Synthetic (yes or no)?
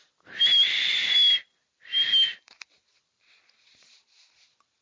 no